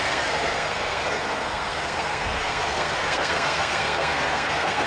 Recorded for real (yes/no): no